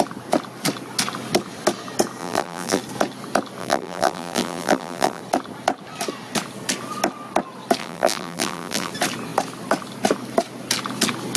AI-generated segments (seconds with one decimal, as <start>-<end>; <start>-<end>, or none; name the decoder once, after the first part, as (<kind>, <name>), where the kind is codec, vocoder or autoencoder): 2.2-2.8 (vocoder, BigVGAN v2); 3.6-5.2; 7.8-8.9